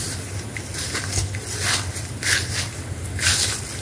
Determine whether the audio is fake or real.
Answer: real